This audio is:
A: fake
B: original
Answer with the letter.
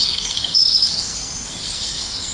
A